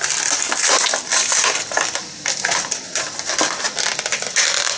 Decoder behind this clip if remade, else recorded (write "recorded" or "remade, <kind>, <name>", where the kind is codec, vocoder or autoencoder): recorded